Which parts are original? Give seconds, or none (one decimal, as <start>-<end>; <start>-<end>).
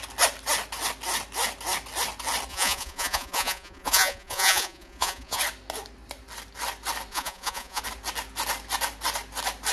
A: 0.0-2.5; 5.4-7.1; 7.8-9.7